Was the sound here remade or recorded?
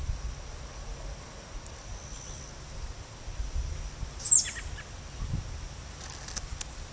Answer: recorded